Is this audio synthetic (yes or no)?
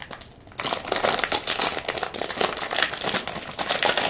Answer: no